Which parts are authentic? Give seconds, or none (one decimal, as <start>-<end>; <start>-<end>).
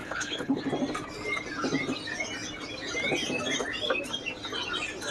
0.6-5.1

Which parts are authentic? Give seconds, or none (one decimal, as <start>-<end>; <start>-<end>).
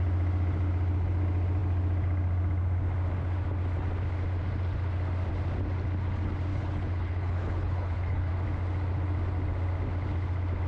0.0-6.5; 8.3-10.7